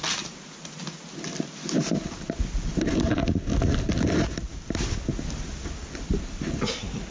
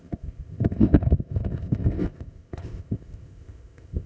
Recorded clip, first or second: first